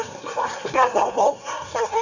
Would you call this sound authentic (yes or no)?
no